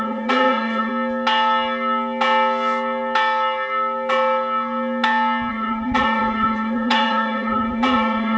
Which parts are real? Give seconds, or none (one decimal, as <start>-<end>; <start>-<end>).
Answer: 0.9-5.5

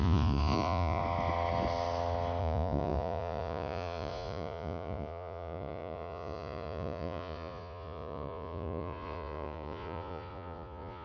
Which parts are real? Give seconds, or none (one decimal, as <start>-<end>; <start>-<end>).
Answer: 1.0-2.4